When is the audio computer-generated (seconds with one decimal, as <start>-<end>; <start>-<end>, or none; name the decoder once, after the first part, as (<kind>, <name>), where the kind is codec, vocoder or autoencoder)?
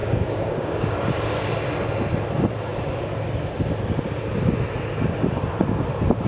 0.0-1.0 (codec, DAC)